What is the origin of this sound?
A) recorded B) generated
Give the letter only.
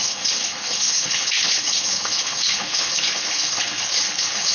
B